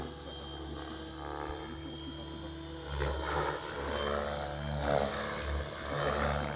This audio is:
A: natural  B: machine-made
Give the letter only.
A